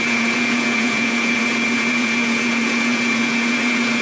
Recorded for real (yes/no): no